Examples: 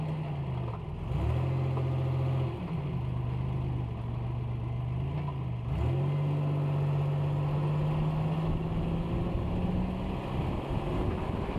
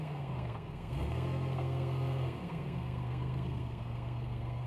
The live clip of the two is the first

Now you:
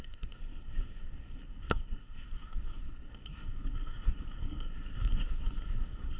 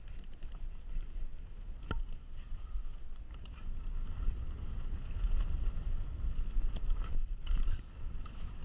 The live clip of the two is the second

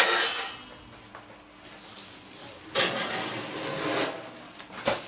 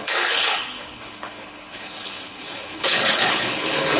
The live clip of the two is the first